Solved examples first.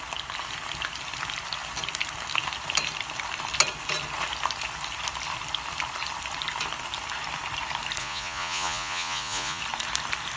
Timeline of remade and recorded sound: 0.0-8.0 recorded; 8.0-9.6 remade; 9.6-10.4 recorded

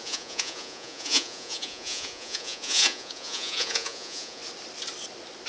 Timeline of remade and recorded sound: 0.0-4.4 remade; 4.4-5.5 recorded

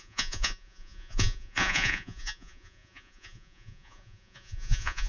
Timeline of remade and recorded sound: 0.0-5.1 remade

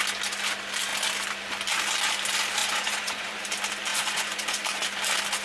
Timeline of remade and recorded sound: 0.0-2.6 recorded; 2.6-3.4 remade; 3.4-3.9 recorded; 3.9-4.6 remade; 4.6-5.4 recorded

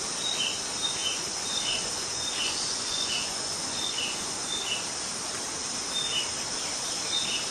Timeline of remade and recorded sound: 0.0-1.0 recorded; 1.0-4.5 remade; 4.5-7.5 recorded

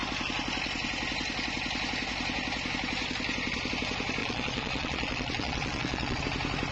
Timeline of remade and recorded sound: 0.0-4.2 recorded; 4.2-6.2 remade; 6.2-6.7 recorded